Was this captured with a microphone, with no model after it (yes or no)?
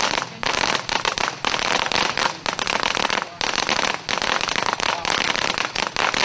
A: yes